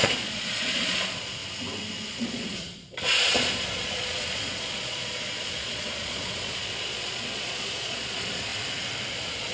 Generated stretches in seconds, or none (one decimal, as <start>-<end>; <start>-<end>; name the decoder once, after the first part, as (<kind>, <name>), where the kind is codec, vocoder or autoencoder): 0.0-1.4 (vocoder, Vocos); 2.1-8.5; 9.1-9.5